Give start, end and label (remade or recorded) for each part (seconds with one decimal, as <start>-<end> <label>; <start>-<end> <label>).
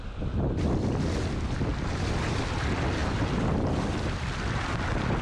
0.0-1.7 recorded; 1.7-2.4 remade; 2.4-5.2 recorded